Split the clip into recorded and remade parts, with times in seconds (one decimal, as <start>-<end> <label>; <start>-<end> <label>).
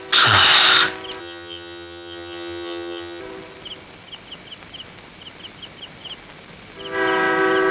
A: 0.0-1.2 recorded; 1.2-3.2 remade; 3.2-7.7 recorded